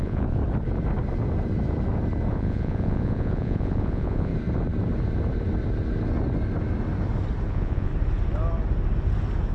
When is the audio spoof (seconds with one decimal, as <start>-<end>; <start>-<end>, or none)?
0.0-0.4; 2.3-4.3; 7.5-7.9